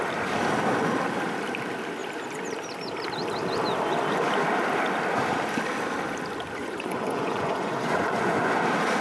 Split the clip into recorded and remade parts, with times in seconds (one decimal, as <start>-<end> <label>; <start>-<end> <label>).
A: 0.0-6.6 recorded; 6.6-8.6 remade; 8.6-9.0 recorded